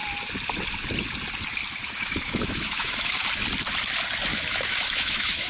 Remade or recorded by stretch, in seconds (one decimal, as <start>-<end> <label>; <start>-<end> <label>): 0.0-1.8 recorded; 1.8-3.1 remade; 3.1-4.3 recorded; 4.3-5.5 remade